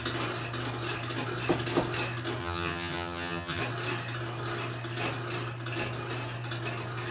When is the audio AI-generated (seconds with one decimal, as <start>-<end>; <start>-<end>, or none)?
2.4-3.6